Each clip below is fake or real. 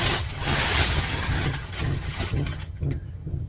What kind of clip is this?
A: fake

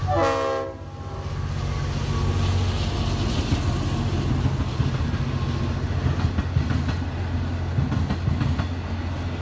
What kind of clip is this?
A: real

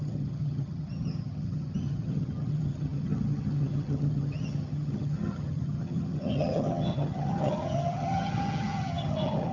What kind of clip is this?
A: fake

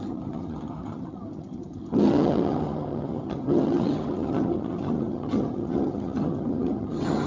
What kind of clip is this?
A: fake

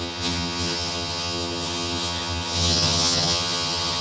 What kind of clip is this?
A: fake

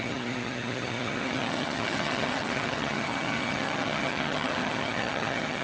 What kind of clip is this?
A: fake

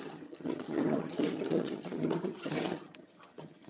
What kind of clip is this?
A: fake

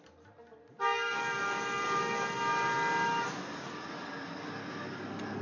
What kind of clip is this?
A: real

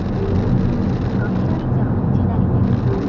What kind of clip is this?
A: real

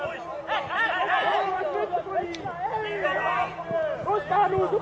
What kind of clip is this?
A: real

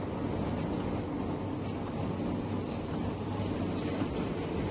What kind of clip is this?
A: real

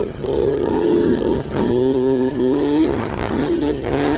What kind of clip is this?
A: fake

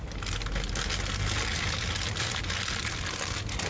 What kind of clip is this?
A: real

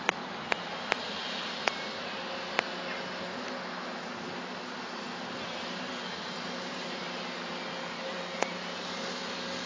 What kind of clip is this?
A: real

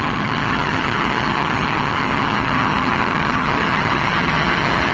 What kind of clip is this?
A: fake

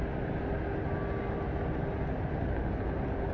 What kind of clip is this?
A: real